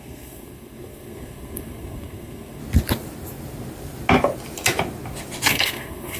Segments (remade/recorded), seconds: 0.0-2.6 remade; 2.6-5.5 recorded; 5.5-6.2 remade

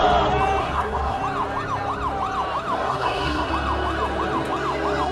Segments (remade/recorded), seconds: 0.0-0.6 recorded; 0.6-1.2 remade; 1.2-2.8 recorded; 2.8-3.5 remade; 3.5-5.1 recorded

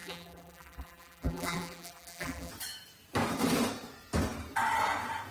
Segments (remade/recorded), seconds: 0.0-2.5 remade; 2.5-5.3 recorded